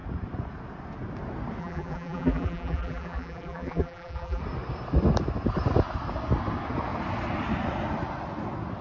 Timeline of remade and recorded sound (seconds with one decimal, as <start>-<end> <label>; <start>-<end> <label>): 0.0-1.6 recorded; 1.6-4.4 remade; 4.4-8.8 recorded